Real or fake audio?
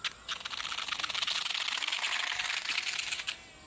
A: real